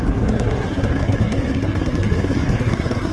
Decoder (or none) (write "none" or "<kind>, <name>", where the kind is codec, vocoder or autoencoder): codec, SNAC